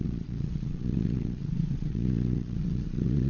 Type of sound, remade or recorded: remade